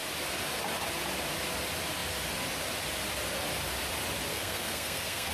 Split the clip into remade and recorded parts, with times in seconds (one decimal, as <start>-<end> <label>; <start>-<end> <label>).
0.0-4.3 recorded; 4.3-5.3 remade